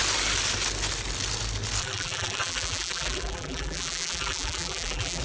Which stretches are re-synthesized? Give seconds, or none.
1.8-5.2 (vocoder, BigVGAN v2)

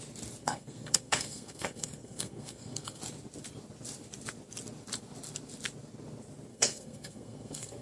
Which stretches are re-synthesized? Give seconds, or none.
0.4-3.0 (codec, SNAC); 6.5-7.8

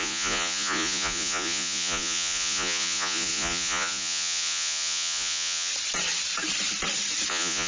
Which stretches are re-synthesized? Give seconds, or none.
0.0-5.7 (vocoder, Vocos); 7.3-7.7

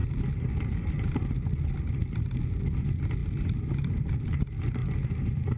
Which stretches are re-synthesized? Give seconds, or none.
none

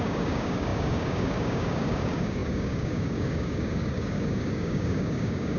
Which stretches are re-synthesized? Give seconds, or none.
0.0-5.6 (codec, DAC)